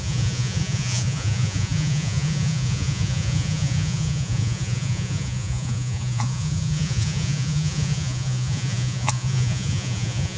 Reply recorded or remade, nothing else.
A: remade